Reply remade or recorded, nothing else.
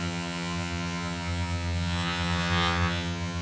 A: remade